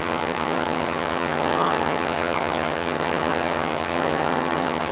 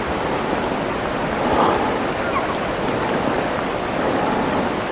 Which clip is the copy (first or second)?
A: first